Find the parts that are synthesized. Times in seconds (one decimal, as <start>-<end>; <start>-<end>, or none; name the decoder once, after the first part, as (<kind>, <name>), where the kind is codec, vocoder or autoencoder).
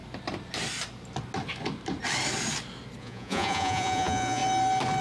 3.0-4.4 (vocoder, Vocos)